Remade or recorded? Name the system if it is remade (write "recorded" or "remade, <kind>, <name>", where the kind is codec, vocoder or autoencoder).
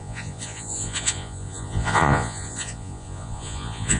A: remade, vocoder, Vocos